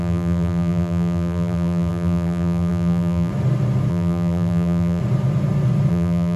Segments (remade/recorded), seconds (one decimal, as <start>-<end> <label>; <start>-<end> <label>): 0.0-3.3 remade; 3.3-3.9 recorded; 3.9-5.0 remade; 5.0-5.9 recorded; 5.9-6.4 remade